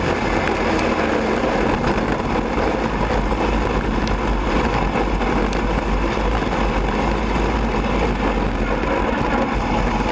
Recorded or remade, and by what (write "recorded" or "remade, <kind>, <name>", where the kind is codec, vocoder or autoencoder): recorded